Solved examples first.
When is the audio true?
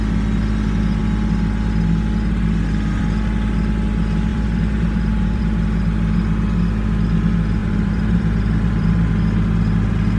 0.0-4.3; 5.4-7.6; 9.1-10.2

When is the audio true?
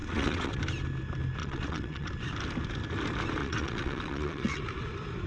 0.6-1.4; 2.1-3.4; 4.6-5.3